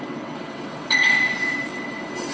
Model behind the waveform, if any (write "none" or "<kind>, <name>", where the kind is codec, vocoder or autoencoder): vocoder, WaveNeXt